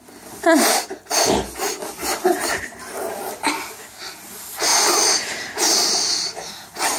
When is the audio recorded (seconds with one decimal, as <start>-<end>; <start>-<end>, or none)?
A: 0.0-2.0; 3.5-4.7; 6.5-7.0

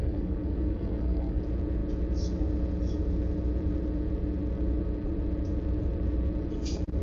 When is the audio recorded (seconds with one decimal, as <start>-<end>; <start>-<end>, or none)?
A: 1.4-7.0

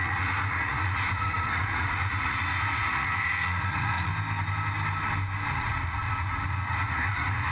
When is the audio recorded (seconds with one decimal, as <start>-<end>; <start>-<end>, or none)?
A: 4.1-5.5

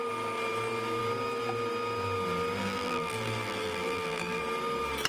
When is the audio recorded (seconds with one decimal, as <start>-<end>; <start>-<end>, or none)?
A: 0.0-2.6; 4.4-5.1